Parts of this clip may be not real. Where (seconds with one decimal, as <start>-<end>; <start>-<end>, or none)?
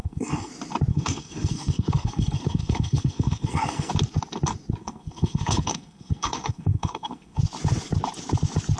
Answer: 0.0-0.5; 0.9-3.9; 4.8-7.4